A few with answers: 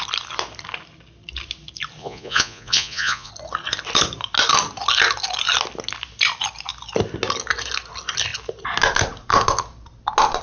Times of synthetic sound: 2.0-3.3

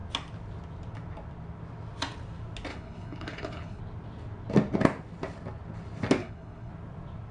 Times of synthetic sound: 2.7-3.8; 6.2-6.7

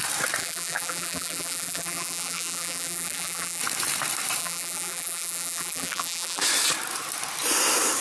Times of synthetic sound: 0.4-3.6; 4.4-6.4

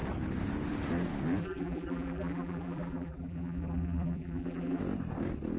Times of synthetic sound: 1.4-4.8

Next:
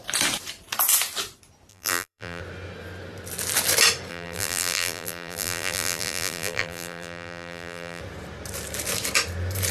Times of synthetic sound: 1.7-2.4; 4.1-8.0